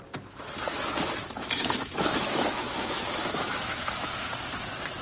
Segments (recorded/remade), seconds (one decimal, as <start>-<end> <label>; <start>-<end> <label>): 0.0-1.2 recorded; 1.2-4.1 remade; 4.1-5.0 recorded